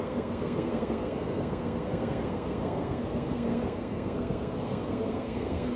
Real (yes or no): no